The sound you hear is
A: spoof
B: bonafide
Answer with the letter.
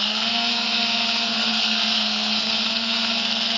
A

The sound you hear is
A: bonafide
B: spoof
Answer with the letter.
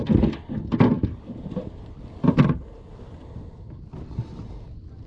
A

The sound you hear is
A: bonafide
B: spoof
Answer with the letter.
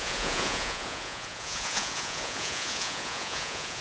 B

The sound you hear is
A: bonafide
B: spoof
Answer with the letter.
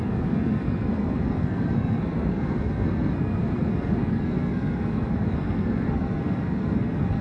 B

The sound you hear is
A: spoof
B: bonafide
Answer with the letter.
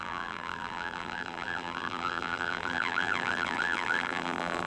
A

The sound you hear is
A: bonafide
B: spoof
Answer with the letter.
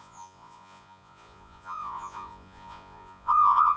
B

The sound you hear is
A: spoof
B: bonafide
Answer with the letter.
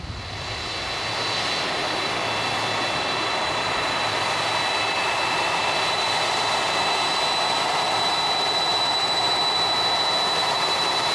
B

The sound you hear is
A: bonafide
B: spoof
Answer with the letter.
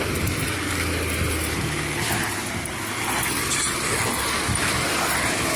A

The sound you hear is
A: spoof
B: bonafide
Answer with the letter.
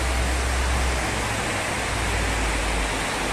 B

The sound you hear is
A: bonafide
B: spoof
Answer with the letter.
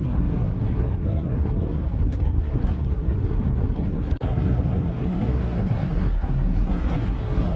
B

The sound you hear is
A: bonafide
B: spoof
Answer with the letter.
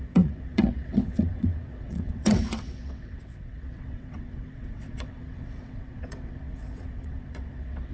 B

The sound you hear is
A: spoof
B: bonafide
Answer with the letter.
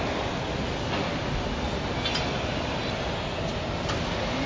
B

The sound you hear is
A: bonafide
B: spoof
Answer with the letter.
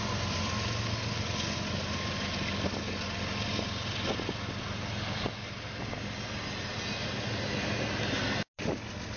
A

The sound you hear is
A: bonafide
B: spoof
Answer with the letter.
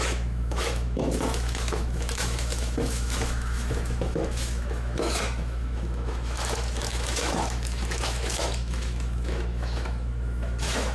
B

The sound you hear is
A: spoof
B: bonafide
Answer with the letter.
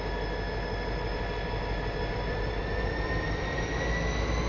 B